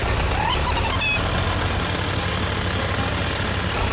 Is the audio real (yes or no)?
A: yes